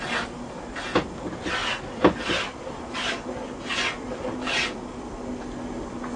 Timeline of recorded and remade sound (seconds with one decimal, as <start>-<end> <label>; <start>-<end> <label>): 0.0-1.6 recorded; 1.6-5.3 remade; 5.3-6.2 recorded